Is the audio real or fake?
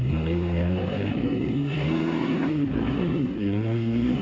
fake